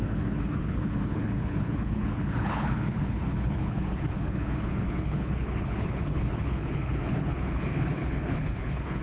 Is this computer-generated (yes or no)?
yes